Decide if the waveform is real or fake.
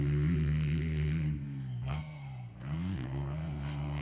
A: fake